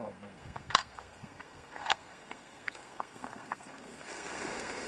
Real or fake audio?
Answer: fake